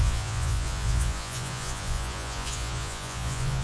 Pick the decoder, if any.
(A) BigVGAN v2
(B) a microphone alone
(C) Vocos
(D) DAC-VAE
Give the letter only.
C